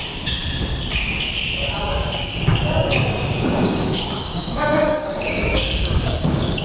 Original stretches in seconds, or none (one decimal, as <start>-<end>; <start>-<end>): 0.4-1.8

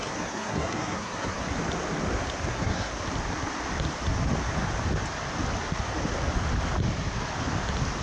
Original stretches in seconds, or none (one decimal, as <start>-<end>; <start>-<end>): 1.4-2.5; 2.9-8.0

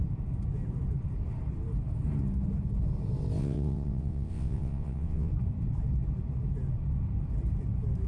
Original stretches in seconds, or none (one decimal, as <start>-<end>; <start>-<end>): 0.0-3.4; 5.3-8.1

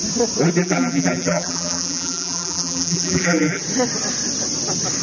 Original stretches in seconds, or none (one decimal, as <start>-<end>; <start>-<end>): 0.0-0.6; 3.6-5.0

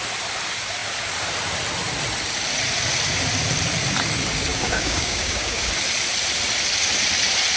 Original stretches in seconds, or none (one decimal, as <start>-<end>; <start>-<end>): 0.0-4.5; 5.7-7.6

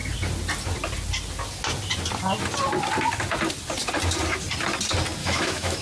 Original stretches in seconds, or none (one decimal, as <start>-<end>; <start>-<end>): 0.0-5.2